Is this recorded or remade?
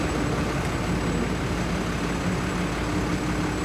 recorded